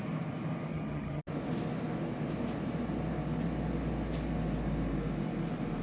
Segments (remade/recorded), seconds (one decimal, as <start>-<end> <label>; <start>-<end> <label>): 0.0-0.7 recorded; 0.7-1.2 remade; 1.2-5.8 recorded